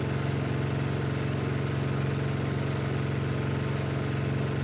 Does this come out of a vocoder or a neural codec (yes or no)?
no